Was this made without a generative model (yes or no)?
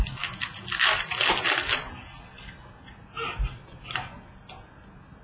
yes